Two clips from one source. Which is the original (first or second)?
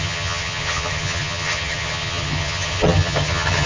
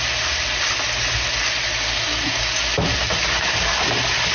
second